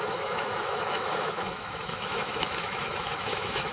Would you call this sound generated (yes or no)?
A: yes